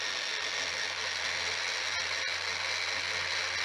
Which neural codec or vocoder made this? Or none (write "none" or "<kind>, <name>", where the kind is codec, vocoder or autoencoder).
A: none